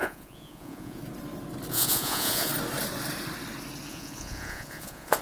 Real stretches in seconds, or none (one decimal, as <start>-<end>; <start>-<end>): 1.0-1.7; 2.5-3.9